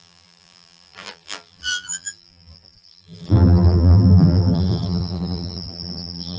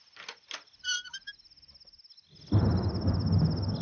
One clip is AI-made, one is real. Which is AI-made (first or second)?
first